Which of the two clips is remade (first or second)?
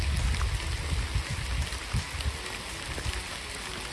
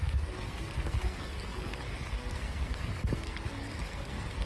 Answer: second